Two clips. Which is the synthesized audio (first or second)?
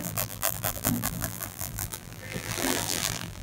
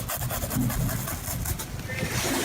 first